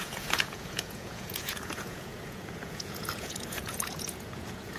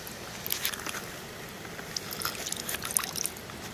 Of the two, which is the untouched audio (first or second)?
second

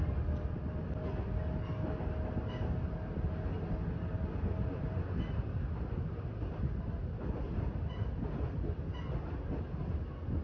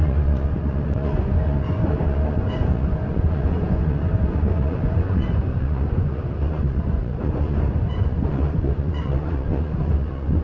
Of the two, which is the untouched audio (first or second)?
first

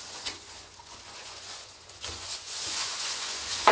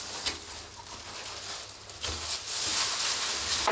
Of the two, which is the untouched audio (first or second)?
second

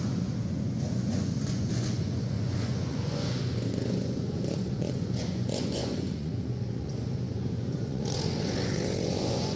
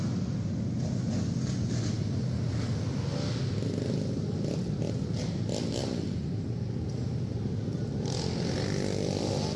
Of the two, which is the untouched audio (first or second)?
second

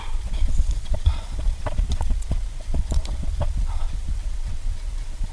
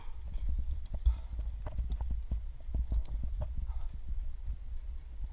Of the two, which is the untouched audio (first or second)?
second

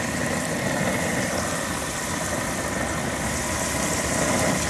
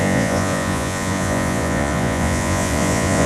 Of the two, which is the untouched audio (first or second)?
first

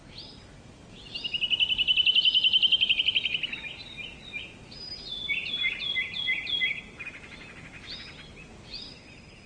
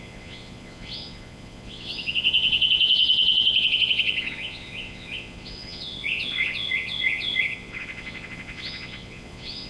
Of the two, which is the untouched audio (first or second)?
first